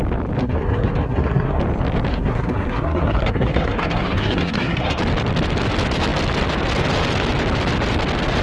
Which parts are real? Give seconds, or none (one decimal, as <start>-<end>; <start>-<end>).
0.0-0.4; 1.6-2.1; 5.0-8.4